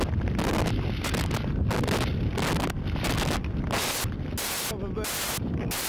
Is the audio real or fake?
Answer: real